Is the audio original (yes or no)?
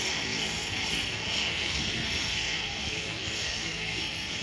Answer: no